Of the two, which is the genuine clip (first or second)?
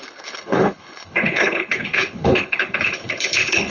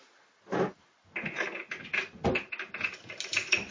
second